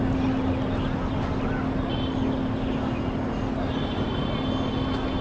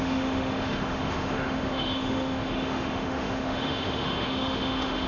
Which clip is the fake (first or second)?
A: second